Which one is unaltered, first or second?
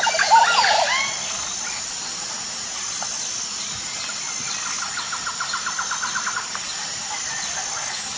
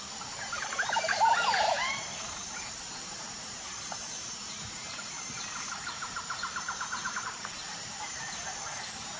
first